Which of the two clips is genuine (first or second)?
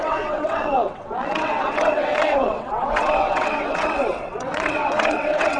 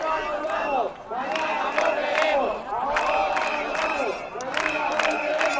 second